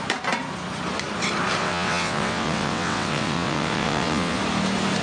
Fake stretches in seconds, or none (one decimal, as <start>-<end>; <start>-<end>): 1.6-4.4